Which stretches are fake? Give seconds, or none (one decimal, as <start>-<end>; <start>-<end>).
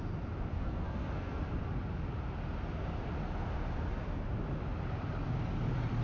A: 0.5-1.4